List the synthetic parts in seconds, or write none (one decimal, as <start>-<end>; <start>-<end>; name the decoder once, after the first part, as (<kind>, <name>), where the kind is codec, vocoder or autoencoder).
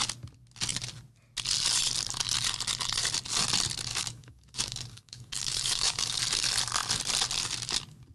3.9-6.2 (codec, DAC)